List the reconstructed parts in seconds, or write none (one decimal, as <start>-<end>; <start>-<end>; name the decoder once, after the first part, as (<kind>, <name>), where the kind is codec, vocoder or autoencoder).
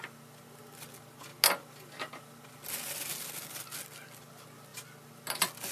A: none